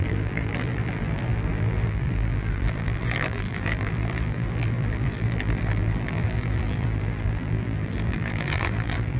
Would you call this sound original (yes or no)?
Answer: no